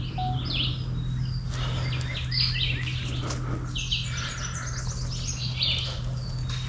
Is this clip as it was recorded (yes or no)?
yes